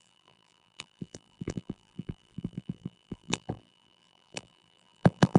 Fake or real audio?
fake